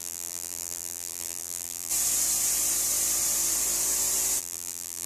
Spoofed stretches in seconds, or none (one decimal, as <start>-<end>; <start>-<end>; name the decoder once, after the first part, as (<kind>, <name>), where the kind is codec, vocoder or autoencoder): 0.0-1.9 (vocoder, BigVGAN v2); 4.4-5.1